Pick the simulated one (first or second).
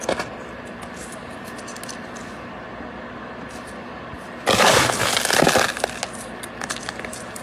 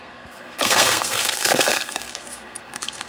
second